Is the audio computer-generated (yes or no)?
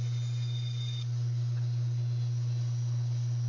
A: no